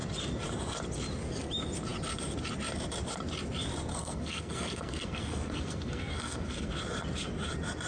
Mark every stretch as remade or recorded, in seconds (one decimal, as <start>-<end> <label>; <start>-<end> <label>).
0.0-3.9 recorded; 3.9-6.7 remade; 6.7-7.9 recorded